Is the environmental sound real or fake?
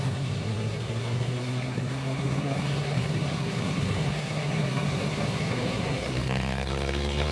fake